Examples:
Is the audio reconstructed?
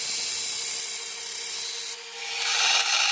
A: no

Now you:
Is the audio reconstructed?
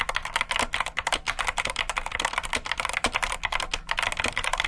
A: no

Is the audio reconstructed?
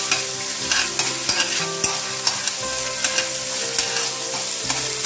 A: no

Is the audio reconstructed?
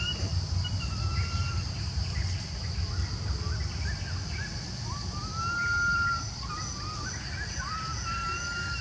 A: no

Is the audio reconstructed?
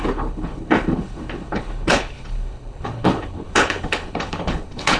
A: yes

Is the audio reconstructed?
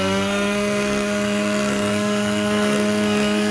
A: yes